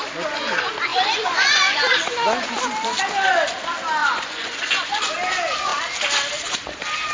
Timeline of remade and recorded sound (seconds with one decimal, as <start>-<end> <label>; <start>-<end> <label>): 0.0-0.9 recorded; 0.9-1.8 remade; 1.8-4.0 recorded; 4.0-5.0 remade; 5.0-7.1 recorded